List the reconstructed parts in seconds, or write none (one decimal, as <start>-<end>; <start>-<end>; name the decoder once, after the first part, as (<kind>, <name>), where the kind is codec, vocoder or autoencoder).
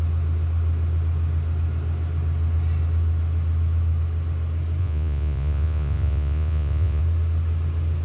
4.8-7.0 (vocoder, Vocos)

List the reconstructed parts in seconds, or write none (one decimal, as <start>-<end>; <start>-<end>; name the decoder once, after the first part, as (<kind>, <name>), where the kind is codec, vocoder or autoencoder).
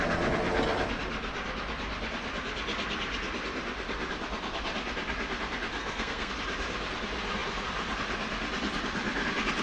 5.8-6.3 (codec, SNAC)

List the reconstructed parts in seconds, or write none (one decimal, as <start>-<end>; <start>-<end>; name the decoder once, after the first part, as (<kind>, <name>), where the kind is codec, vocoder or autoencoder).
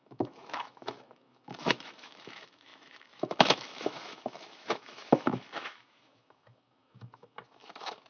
0.0-8.1 (autoencoder, DAC-VAE)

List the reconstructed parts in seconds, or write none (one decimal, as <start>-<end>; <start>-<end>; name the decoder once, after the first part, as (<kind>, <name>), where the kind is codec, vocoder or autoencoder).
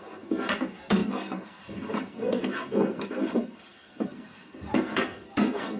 0.0-5.8 (codec, SNAC)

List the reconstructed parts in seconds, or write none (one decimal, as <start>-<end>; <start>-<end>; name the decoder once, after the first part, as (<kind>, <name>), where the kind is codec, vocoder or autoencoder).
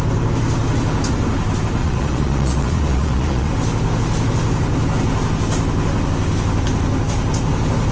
1.8-3.5 (vocoder, Vocos)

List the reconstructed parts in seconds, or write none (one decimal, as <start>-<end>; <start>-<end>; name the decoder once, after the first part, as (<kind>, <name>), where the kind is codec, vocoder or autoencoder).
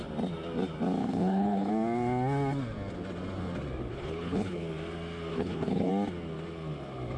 1.0-1.7 (codec, HILCodec); 3.9-4.6; 5.3-5.9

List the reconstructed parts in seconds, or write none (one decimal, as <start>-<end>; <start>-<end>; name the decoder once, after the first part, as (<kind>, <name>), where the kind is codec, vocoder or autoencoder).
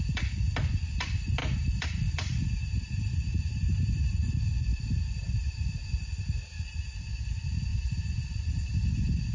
1.4-4.3 (vocoder, BigVGAN v2); 4.7-5.6; 7.7-8.3